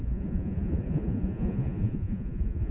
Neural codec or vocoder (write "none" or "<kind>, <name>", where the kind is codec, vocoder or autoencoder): vocoder, Vocos